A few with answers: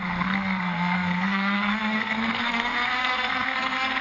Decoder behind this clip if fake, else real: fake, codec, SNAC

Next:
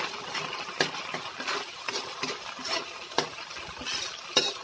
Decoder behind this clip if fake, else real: real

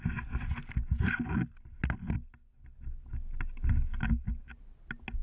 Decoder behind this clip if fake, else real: real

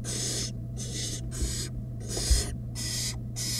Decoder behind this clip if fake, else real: fake, vocoder, BigVGAN v2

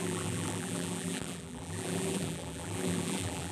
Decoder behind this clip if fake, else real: fake, vocoder, BigVGAN v2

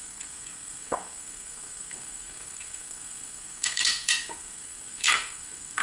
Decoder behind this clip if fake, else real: fake, codec, SNAC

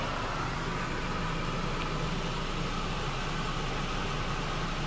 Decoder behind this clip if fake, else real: real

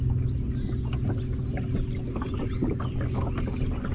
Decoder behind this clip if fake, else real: real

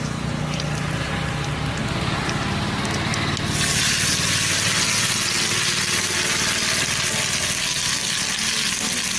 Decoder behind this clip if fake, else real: real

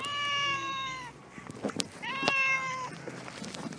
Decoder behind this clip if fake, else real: fake, vocoder, BigVGAN v2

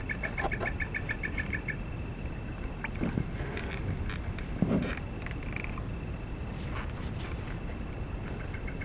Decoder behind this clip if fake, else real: real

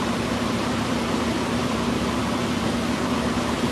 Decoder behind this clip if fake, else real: fake, vocoder, BigVGAN v2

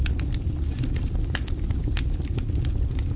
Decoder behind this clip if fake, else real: real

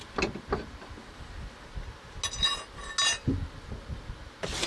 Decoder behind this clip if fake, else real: real